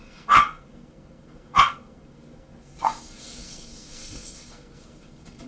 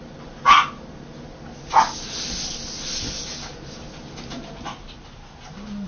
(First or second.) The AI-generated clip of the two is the first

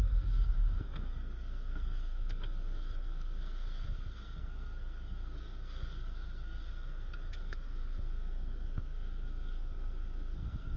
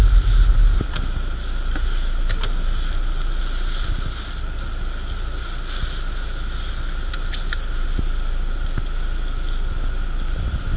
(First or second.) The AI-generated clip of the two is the first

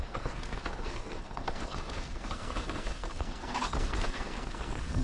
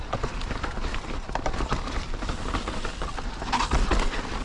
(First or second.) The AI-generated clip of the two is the first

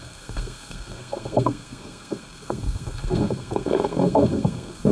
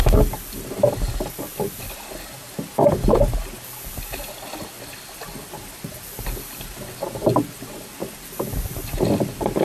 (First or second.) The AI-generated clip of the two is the first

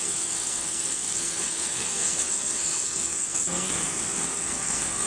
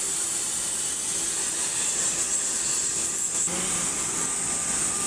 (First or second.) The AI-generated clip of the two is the first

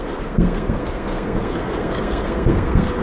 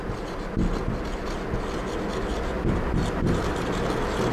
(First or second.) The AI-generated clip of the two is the first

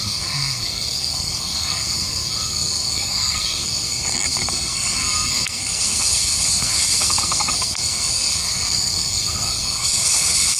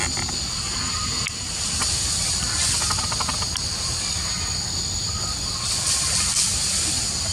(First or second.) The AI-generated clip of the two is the first